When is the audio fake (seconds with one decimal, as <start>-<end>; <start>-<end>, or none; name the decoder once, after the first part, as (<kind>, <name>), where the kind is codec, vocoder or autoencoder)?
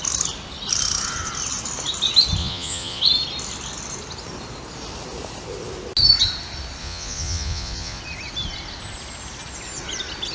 2.4-3.0 (vocoder, Vocos); 6.8-8.0